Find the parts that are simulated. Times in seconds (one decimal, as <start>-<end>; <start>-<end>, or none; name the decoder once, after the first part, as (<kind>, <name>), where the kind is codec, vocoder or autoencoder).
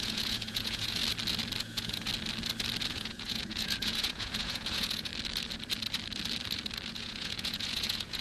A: 0.0-1.0 (vocoder, Vocos); 1.6-2.1; 2.9-5.1; 6.9-8.2